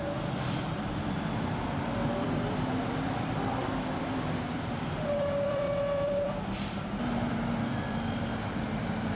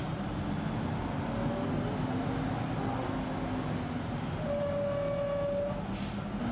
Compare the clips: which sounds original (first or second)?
second